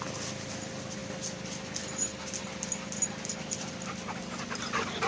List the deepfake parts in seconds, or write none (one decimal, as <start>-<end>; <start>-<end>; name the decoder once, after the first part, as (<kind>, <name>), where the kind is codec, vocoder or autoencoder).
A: none